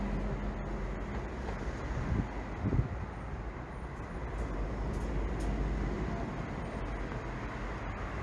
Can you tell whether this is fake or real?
real